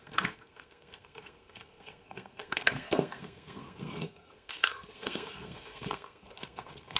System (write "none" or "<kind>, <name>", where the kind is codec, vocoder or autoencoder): codec, SNAC